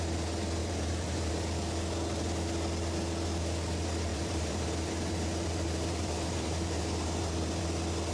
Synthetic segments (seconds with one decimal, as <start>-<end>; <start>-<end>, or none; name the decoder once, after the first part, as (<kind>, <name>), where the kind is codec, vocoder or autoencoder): 0.6-1.3 (vocoder, BigVGAN v2); 4.1-7.6